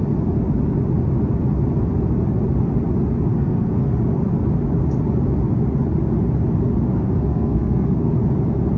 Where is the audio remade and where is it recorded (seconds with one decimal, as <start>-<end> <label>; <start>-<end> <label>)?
0.0-3.3 recorded; 3.3-4.0 remade; 4.0-6.9 recorded; 6.9-8.1 remade; 8.1-8.8 recorded